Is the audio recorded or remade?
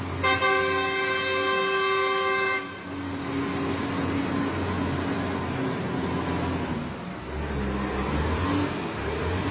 recorded